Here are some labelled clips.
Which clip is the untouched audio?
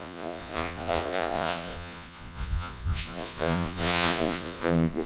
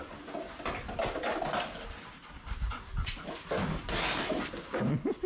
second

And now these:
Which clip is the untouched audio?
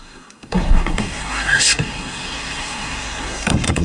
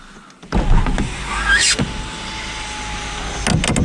second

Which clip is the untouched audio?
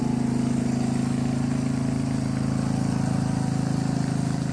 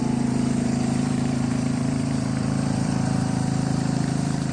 first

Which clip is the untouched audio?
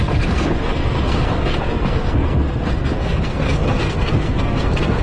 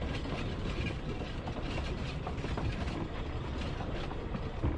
second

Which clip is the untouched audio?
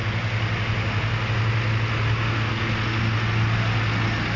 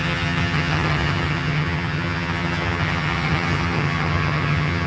first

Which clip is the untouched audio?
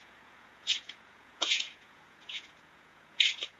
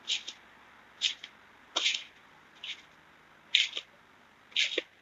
second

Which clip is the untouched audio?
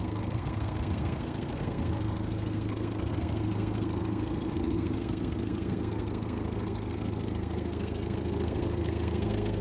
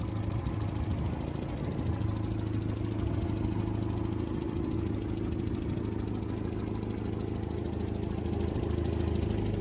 second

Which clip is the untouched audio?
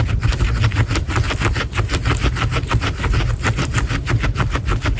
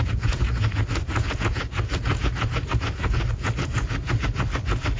first